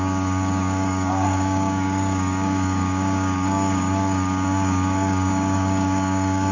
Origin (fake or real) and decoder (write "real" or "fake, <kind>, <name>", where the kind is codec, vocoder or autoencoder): fake, codec, DAC